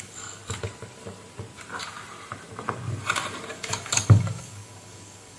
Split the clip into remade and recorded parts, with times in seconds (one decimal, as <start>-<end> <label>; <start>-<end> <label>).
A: 0.0-0.4 remade; 0.4-3.5 recorded; 3.5-5.4 remade